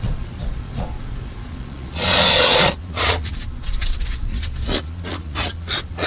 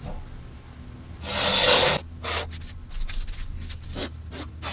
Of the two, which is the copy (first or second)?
first